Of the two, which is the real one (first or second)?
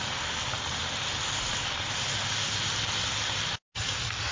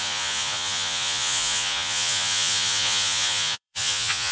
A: first